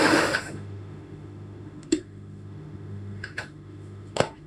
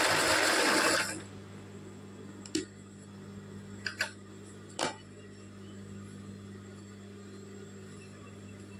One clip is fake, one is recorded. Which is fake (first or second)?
first